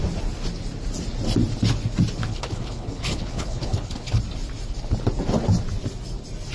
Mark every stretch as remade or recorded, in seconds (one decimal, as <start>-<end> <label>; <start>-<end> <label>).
0.0-2.2 recorded; 2.2-4.2 remade; 4.2-6.5 recorded